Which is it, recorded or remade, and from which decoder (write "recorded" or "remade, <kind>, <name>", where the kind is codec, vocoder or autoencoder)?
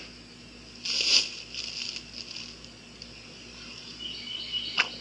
recorded